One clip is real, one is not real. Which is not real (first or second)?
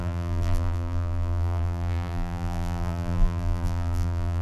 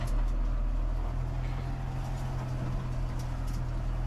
first